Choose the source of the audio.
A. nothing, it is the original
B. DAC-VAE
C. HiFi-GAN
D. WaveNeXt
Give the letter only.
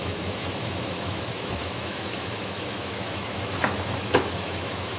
B